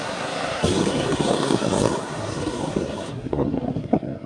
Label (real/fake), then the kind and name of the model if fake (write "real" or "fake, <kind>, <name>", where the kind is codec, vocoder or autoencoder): fake, codec, SNAC